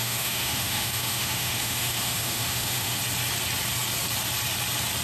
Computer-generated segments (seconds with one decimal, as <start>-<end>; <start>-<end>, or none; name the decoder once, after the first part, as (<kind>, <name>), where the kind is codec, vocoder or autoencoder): 0.0-3.0 (autoencoder, DAC-VAE)